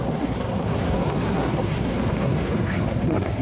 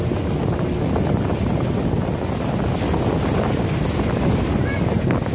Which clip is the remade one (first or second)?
first